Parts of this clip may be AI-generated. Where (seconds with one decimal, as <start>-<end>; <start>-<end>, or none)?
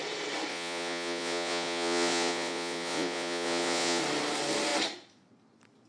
0.5-4.0